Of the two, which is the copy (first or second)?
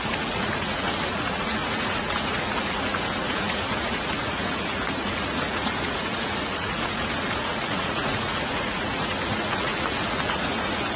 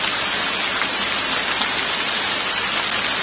first